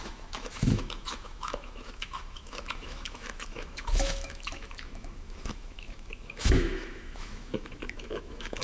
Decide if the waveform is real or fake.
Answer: fake